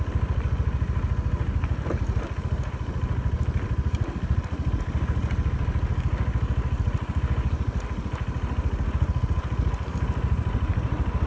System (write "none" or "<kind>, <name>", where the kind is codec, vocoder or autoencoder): none